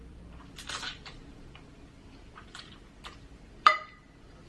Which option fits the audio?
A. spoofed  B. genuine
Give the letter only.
A